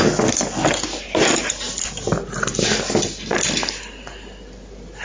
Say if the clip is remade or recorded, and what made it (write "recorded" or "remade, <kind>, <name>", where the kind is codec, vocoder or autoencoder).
recorded